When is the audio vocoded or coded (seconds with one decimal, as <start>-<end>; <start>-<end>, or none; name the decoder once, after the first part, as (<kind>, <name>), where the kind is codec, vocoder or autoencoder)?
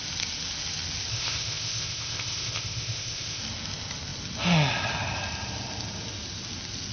1.1-3.4 (codec, ZipCodec)